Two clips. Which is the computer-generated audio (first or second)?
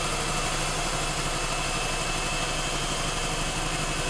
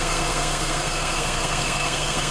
second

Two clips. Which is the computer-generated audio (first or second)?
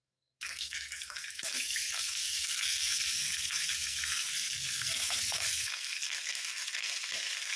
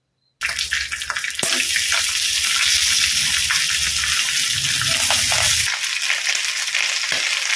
first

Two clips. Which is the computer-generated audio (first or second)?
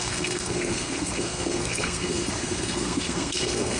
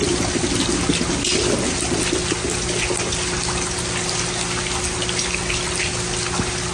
first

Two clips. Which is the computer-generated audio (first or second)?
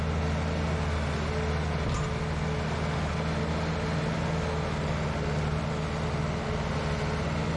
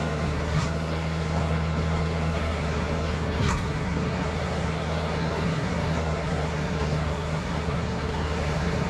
second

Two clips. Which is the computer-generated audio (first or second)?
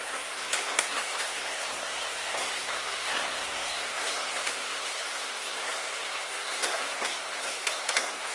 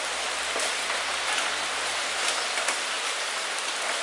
first